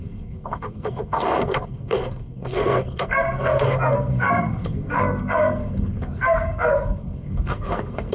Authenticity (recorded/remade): remade